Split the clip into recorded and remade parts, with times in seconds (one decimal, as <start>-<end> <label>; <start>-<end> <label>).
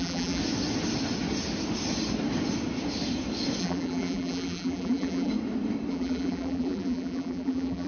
0.0-0.4 remade; 0.4-3.6 recorded; 3.6-5.3 remade; 5.3-5.9 recorded; 5.9-7.9 remade